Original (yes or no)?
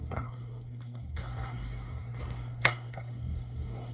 no